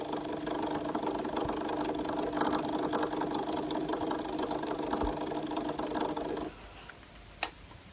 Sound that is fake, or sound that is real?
real